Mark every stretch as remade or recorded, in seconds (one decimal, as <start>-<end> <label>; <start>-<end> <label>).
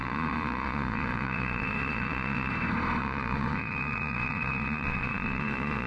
0.0-2.5 remade; 2.5-3.0 recorded; 3.0-5.9 remade